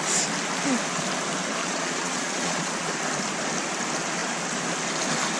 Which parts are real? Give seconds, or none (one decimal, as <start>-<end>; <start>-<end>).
0.0-1.6; 2.9-5.4